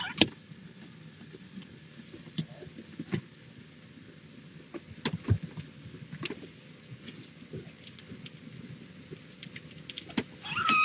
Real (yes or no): yes